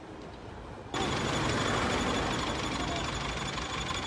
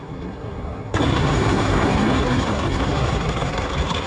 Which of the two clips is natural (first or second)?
first